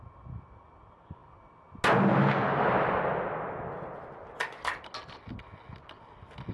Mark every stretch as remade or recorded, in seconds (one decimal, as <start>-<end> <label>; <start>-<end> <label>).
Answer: 0.0-6.5 recorded